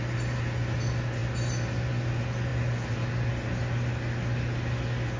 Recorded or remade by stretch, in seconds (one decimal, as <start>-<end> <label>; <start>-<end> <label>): 0.0-5.2 recorded

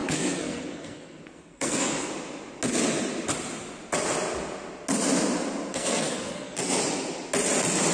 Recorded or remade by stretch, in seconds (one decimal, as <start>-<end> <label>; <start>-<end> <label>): 0.0-2.1 remade; 2.1-5.7 recorded; 5.7-6.8 remade; 6.8-7.9 recorded

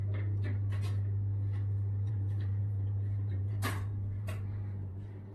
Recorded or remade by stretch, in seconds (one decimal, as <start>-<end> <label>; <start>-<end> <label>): 0.0-2.1 recorded; 2.1-5.3 remade